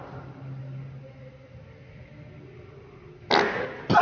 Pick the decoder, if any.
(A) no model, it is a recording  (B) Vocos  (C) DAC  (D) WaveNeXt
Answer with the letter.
A